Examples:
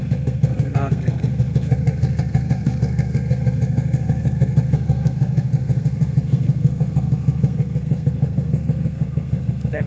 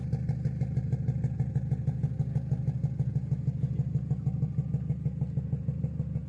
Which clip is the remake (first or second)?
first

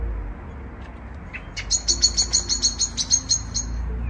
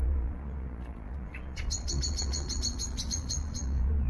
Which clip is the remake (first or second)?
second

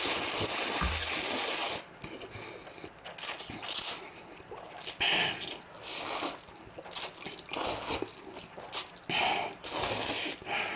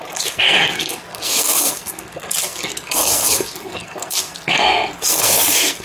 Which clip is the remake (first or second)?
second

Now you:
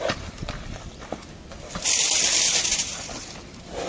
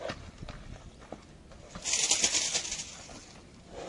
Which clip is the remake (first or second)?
first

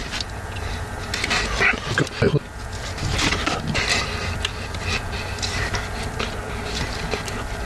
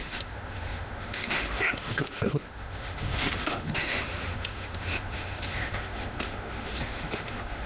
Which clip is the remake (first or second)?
second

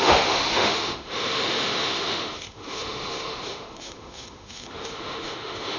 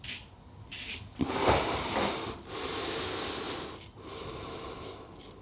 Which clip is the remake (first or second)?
first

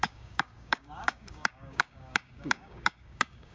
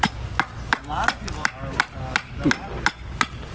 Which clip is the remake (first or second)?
first